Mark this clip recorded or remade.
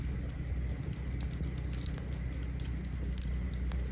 recorded